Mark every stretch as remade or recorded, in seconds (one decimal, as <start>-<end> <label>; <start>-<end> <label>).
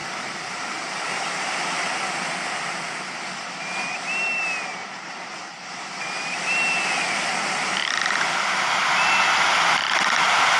0.0-10.6 recorded